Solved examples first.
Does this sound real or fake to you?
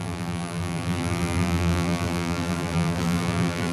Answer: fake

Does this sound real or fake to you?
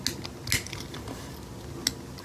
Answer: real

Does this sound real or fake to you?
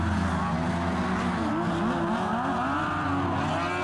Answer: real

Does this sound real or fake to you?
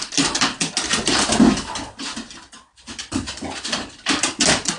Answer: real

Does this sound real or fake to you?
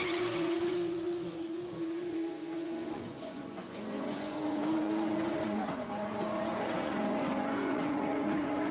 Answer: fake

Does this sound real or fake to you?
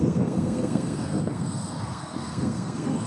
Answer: fake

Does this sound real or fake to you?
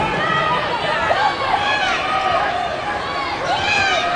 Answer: real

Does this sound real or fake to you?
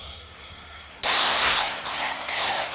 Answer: fake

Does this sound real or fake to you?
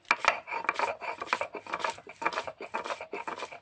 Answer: real